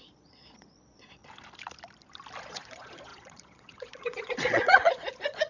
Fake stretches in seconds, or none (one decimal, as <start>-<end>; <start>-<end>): 0.0-1.2; 2.4-5.5